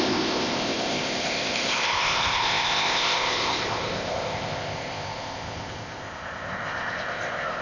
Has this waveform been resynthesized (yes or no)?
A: yes